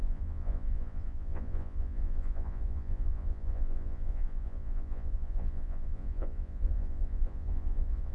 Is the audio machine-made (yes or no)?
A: yes